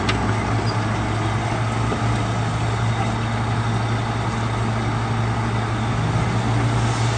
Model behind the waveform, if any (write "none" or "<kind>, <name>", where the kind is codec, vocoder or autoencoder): none